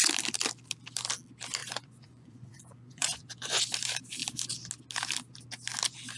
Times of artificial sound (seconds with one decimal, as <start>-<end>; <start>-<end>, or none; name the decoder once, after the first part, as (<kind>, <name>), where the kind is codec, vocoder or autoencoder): 1.6-3.6 (vocoder, Vocos)